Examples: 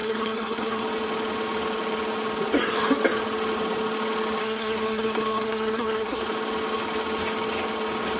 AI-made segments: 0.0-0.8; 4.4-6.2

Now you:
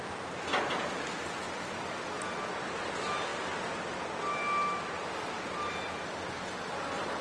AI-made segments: none

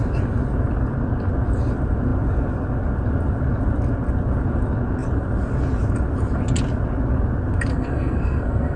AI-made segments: 7.7-8.8

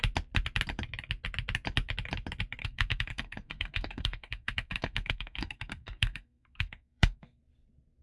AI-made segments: 2.6-7.4

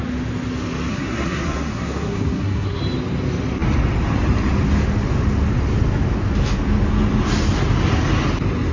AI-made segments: 0.9-2.8